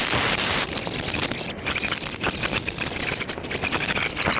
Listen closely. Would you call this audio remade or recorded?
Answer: recorded